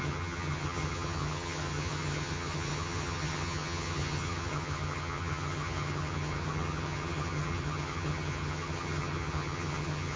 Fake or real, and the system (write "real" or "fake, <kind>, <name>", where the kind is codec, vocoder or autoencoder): fake, vocoder, HiFi-GAN